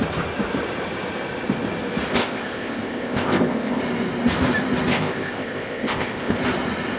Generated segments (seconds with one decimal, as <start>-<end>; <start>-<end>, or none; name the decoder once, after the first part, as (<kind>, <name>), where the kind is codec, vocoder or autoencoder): 2.1-3.8 (codec, ZipCodec); 4.9-6.4